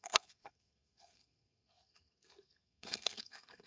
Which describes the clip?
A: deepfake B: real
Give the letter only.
A